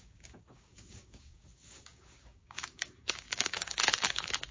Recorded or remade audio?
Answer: remade